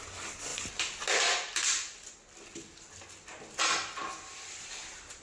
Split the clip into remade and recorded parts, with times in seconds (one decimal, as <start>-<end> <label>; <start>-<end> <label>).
0.0-5.2 recorded

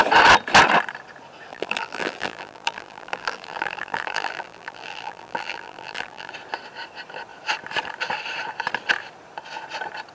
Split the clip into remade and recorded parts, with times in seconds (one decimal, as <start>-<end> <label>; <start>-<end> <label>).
0.0-1.5 recorded; 1.5-6.3 remade; 6.3-10.1 recorded

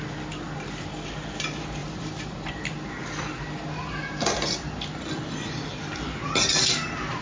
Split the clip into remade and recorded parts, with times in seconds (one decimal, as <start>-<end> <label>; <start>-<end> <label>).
0.0-1.8 recorded; 1.8-2.5 remade; 2.5-7.2 recorded

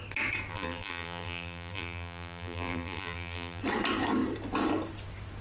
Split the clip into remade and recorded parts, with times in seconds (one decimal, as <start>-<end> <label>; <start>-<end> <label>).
0.0-0.5 recorded; 0.5-3.6 remade; 3.6-5.4 recorded

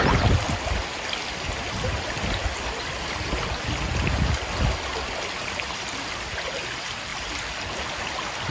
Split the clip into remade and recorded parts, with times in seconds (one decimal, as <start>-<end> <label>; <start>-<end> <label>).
0.0-8.5 recorded

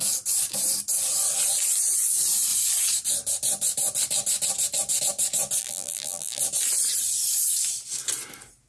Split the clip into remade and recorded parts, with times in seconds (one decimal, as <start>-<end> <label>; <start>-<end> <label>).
0.0-5.6 recorded; 5.6-6.4 remade; 6.4-8.7 recorded

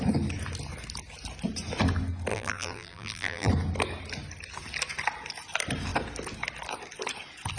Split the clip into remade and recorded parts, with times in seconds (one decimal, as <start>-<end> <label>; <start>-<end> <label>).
0.0-2.3 recorded; 2.3-3.5 remade; 3.5-7.6 recorded

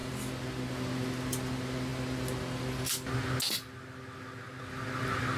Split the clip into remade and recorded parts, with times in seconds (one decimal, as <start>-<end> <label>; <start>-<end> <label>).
0.0-5.4 recorded